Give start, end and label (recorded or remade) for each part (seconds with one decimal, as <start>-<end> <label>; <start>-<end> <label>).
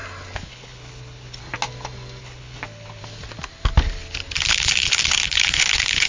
0.0-0.5 recorded; 0.5-1.4 remade; 1.4-2.2 recorded; 2.2-3.0 remade; 3.0-4.5 recorded; 4.5-6.1 remade